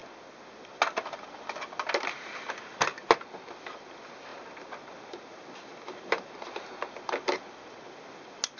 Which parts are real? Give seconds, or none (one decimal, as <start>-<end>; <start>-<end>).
0.0-8.6